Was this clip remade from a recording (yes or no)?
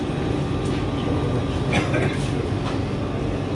no